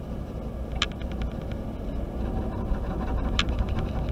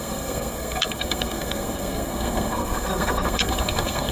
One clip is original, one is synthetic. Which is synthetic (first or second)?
second